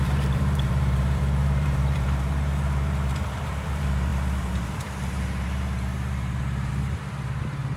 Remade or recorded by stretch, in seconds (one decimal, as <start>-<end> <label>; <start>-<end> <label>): 0.0-7.8 remade